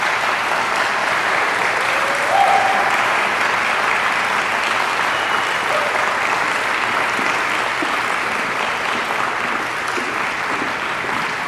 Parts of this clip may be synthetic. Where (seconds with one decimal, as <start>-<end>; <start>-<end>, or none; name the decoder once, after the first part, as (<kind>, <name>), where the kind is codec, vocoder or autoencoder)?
1.0-3.4 (vocoder, BigVGAN v2)